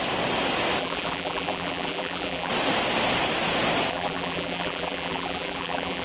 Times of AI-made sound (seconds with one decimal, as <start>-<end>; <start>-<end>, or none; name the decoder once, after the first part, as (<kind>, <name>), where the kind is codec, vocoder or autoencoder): 0.8-2.5 (vocoder, BigVGAN v2); 3.9-6.0